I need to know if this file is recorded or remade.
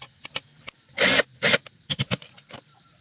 recorded